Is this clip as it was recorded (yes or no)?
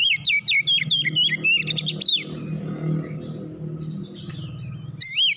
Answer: yes